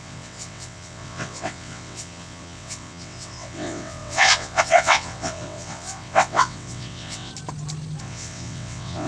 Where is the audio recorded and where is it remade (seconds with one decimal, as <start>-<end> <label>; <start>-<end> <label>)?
0.0-7.3 remade; 7.3-8.0 recorded; 8.0-9.1 remade